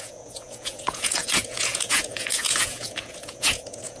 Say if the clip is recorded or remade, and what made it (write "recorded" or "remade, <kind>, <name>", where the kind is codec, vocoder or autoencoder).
remade, vocoder, Vocos